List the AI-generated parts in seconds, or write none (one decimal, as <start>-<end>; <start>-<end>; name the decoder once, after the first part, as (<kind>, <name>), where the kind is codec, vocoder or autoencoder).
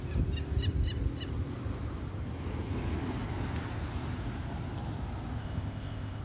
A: 5.4-6.2 (codec, ZipCodec)